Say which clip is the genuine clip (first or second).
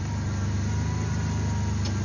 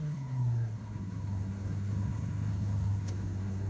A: first